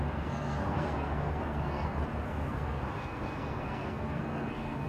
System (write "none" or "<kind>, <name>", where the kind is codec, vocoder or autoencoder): codec, SNAC